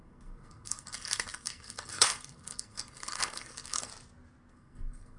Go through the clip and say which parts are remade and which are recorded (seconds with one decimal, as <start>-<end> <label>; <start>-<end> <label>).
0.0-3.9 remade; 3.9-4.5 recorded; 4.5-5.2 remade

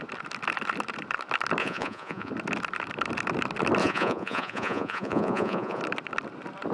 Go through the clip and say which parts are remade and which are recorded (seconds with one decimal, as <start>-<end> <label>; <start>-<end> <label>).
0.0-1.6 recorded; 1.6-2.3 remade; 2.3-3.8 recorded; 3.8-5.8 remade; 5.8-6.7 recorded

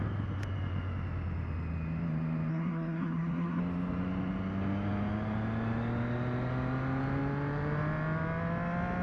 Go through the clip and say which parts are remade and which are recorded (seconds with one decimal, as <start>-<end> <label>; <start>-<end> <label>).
0.0-2.5 recorded; 2.5-3.6 remade; 3.6-9.0 recorded

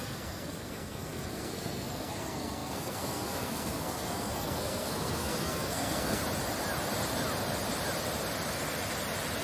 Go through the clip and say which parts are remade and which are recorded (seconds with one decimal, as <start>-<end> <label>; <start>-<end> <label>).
0.0-6.2 remade; 6.2-9.4 recorded

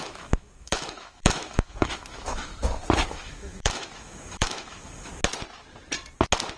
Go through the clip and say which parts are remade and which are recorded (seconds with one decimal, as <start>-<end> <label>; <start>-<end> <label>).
0.0-2.5 remade; 2.5-3.1 recorded; 3.1-5.1 remade; 5.1-6.6 recorded

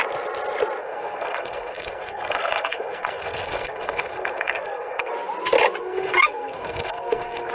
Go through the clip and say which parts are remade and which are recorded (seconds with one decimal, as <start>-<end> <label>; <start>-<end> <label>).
0.0-0.8 recorded; 0.8-5.1 remade; 5.1-5.8 recorded; 5.8-7.5 remade

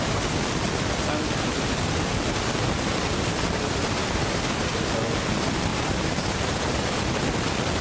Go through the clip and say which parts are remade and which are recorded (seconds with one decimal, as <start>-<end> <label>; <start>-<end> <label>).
0.0-4.0 recorded; 4.0-4.8 remade; 4.8-5.7 recorded; 5.7-7.2 remade; 7.2-7.8 recorded